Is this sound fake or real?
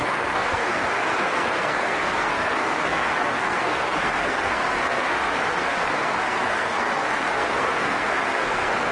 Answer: fake